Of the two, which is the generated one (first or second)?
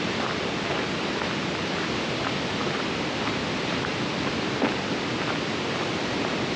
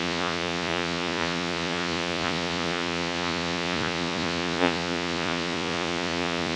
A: second